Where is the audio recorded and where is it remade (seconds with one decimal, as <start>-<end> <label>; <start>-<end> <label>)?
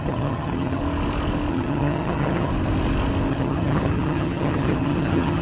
0.0-0.8 remade; 0.8-1.5 recorded; 1.5-2.5 remade; 2.5-3.3 recorded; 3.3-5.4 remade